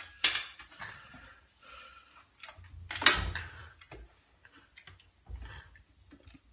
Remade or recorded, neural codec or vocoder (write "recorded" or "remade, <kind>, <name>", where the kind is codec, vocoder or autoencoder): recorded